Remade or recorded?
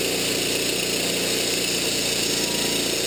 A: recorded